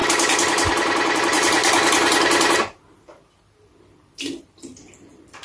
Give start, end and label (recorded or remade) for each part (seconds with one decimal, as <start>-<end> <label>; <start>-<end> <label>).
0.0-1.2 recorded; 1.2-1.6 remade; 1.6-4.4 recorded; 4.4-5.4 remade